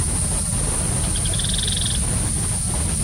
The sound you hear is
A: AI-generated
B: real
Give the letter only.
B